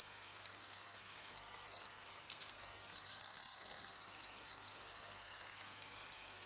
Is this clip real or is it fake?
fake